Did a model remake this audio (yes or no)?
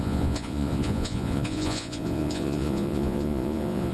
yes